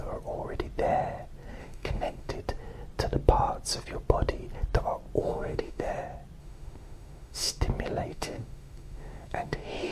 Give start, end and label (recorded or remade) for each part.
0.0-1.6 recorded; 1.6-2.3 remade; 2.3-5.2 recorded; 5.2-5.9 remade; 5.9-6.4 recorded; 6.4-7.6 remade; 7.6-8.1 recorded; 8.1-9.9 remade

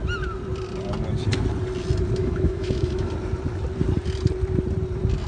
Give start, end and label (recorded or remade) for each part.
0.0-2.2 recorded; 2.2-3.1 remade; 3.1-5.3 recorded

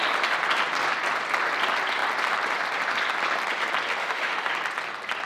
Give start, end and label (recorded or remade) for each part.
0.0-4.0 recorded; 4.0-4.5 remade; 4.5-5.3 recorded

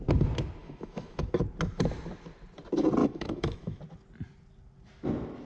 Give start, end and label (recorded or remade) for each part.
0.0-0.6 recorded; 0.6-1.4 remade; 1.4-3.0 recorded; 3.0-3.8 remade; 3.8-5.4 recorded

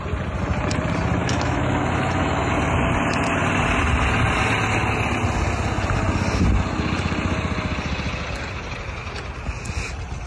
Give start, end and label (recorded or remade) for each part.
0.0-1.2 recorded; 1.2-2.5 remade; 2.5-10.3 recorded

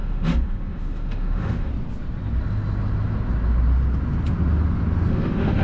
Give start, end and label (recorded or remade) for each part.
0.0-1.7 remade; 1.7-5.1 recorded; 5.1-5.6 remade